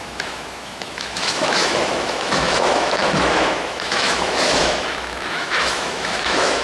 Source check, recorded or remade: remade